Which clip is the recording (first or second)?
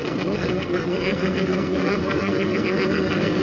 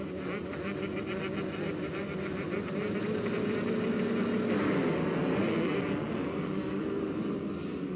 second